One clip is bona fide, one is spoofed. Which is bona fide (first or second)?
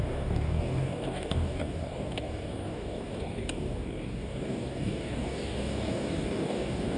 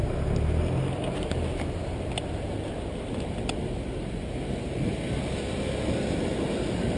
second